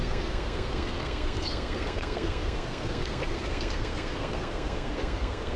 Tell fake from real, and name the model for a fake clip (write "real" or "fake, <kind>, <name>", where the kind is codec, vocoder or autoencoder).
fake, codec, SNAC